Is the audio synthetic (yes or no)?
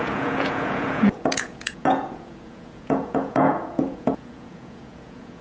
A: yes